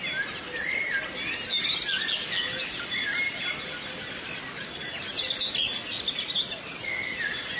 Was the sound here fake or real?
real